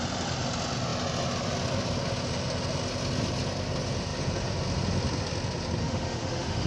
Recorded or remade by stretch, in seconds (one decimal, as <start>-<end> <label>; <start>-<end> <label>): 0.0-5.8 recorded; 5.8-6.7 remade